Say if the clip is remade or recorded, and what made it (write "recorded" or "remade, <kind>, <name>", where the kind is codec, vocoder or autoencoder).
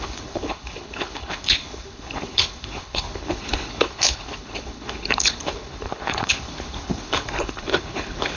remade, codec, HILCodec